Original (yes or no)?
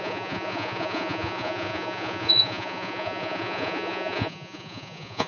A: no